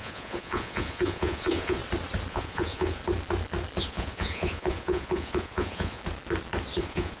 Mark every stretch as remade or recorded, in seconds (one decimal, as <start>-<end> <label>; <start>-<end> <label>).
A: 0.0-1.8 remade; 1.8-2.3 recorded; 2.3-3.0 remade; 3.0-3.8 recorded; 3.8-6.0 remade; 6.0-6.8 recorded; 6.8-7.2 remade

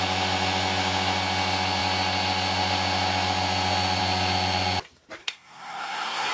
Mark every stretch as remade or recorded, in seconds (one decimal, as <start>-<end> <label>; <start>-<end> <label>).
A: 0.0-5.2 recorded; 5.2-6.3 remade

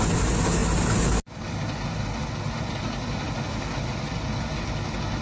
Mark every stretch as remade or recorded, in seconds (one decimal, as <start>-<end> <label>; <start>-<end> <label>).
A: 0.0-5.2 recorded

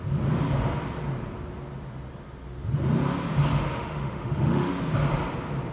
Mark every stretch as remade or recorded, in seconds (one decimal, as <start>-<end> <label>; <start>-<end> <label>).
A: 0.0-3.5 recorded; 3.5-4.7 remade; 4.7-5.7 recorded

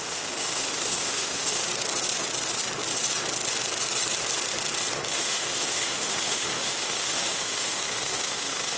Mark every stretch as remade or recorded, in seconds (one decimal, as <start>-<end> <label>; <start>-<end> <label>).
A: 0.0-1.6 remade; 1.6-5.1 recorded; 5.1-8.8 remade

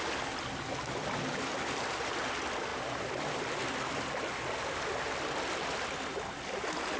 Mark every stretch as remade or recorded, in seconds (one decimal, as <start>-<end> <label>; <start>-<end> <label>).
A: 0.0-7.0 recorded

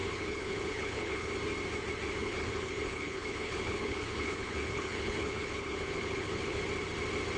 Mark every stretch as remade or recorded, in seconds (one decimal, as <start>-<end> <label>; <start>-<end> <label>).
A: 0.0-1.3 remade; 1.3-2.2 recorded; 2.2-6.6 remade; 6.6-7.4 recorded

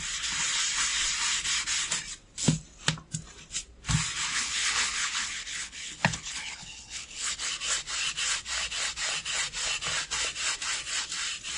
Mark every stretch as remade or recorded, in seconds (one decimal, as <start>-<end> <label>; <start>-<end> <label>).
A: 0.0-4.3 recorded; 4.3-7.5 remade; 7.5-11.6 recorded